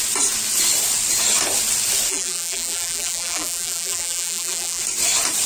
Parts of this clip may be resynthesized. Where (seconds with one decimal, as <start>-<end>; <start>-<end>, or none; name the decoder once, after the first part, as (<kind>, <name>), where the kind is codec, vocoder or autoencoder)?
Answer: 2.1-4.8 (vocoder, BigVGAN v2)